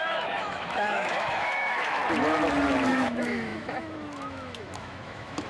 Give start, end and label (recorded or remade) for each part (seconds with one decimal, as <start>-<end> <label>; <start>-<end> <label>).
0.0-2.0 remade; 2.0-2.9 recorded; 2.9-5.5 remade